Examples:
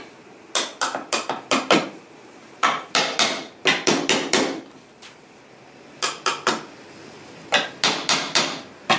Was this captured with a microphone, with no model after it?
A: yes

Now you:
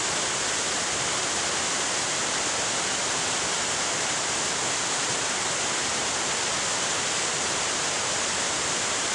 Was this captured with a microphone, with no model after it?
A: yes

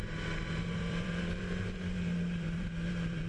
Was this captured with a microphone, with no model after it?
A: no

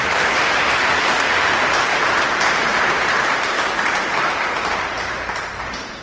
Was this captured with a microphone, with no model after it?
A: no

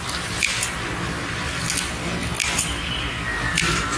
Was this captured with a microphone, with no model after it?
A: yes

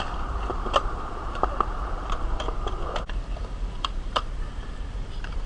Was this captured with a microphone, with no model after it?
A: no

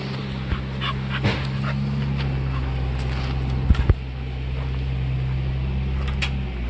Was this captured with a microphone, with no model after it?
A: yes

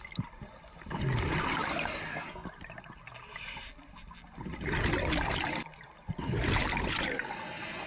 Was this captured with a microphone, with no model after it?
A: yes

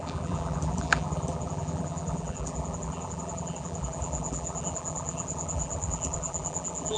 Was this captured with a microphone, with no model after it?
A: no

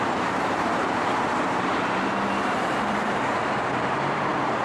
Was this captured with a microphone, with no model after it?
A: no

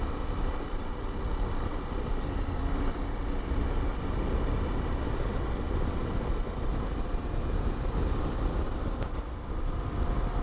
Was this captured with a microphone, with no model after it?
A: no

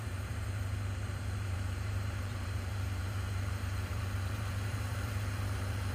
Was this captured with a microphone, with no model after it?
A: no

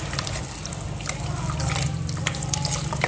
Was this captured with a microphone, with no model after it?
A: no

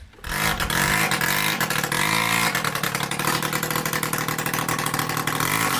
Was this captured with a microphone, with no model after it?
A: yes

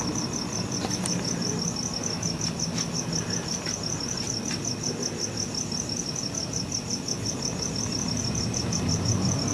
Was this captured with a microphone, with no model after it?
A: yes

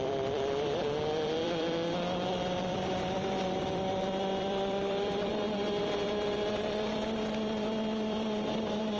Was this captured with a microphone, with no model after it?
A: no